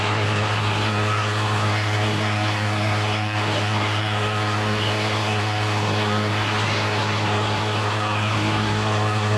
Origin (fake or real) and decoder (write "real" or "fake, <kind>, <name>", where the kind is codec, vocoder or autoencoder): fake, codec, SNAC